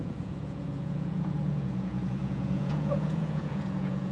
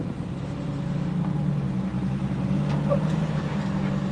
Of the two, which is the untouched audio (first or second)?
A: second